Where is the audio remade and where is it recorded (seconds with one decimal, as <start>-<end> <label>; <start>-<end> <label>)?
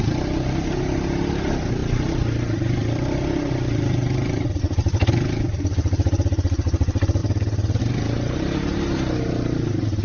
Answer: 0.0-10.0 recorded